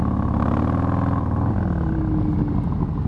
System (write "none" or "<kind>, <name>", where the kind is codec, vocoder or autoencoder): none